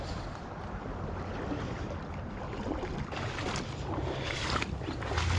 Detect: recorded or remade recorded